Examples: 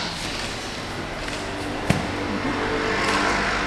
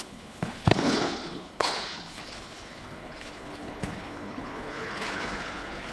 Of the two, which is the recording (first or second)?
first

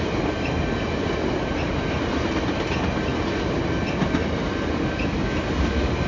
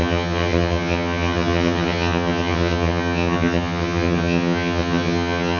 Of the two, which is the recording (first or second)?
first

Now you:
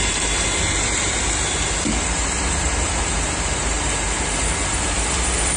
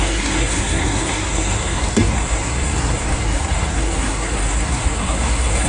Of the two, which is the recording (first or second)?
first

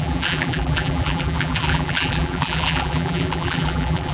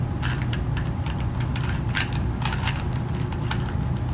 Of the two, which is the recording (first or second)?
second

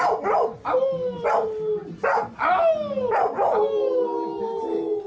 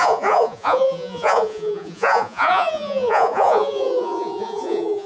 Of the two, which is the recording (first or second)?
first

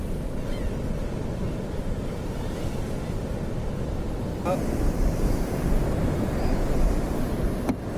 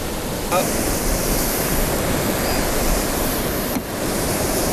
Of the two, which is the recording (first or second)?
first